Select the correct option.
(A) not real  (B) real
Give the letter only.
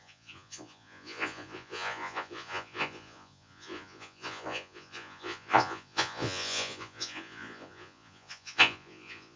A